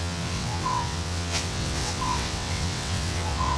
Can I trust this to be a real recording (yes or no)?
no